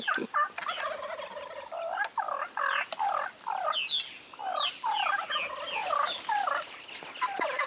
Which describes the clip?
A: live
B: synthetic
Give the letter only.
A